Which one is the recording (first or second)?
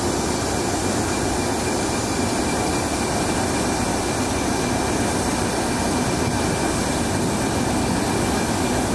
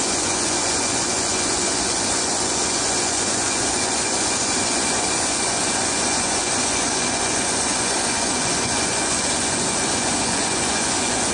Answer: first